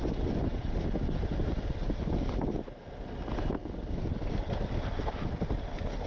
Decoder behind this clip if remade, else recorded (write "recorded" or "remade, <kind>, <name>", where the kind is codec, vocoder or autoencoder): recorded